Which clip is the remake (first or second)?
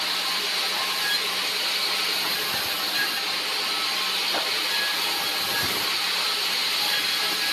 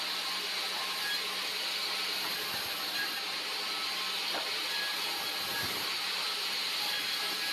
first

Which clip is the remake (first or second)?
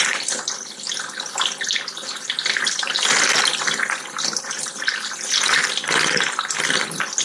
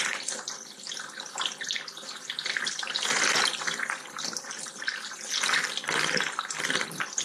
second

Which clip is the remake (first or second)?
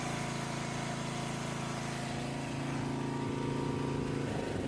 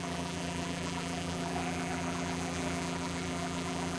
second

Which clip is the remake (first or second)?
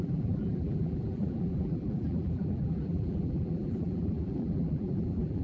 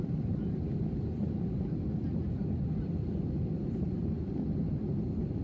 first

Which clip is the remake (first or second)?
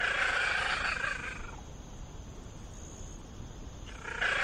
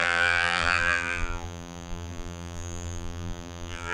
second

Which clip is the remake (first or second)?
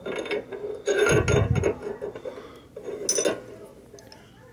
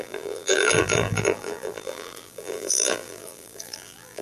second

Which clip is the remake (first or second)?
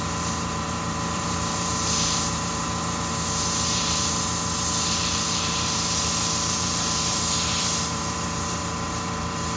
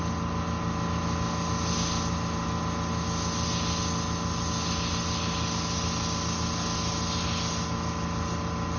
first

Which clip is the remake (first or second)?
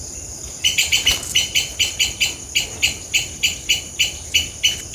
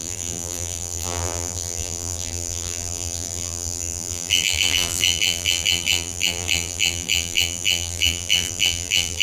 second